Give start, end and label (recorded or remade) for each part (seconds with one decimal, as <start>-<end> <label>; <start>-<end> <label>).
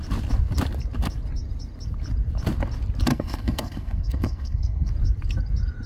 0.0-3.1 recorded; 3.1-4.9 remade; 4.9-5.9 recorded